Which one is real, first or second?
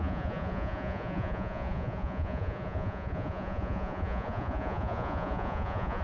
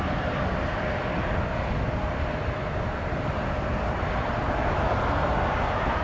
second